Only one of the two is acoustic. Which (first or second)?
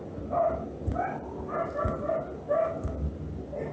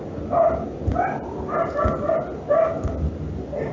first